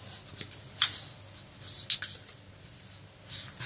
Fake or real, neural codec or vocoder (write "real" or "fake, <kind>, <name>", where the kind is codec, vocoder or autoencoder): real